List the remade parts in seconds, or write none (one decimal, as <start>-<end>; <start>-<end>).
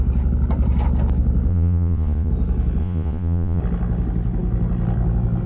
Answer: 1.5-2.3; 2.8-3.6